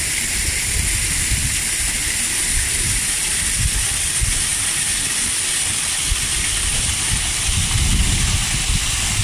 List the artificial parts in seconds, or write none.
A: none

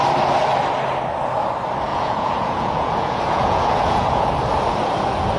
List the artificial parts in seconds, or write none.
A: 1.9-4.3 (vocoder, Vocos)

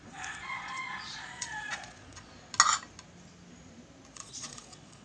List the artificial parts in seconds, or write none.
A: 0.0-2.3 (vocoder, Vocos); 4.1-5.0

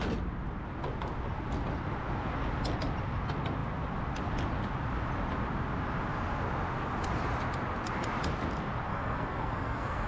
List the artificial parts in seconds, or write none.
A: 8.9-10.1 (codec, SNAC)

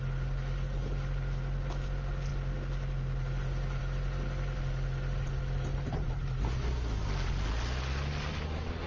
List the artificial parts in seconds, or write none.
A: 5.7-6.5 (vocoder, BigVGAN v2)

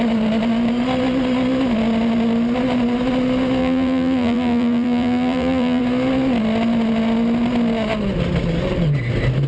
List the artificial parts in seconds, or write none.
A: 3.6-5.8 (vocoder, BigVGAN v2)

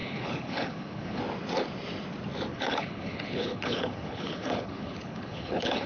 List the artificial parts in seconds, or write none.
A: 0.0-1.2 (codec, HILCodec); 2.5-5.9